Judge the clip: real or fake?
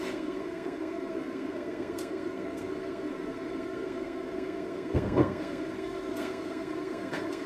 fake